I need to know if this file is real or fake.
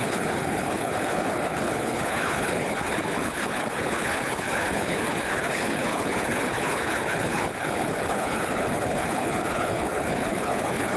fake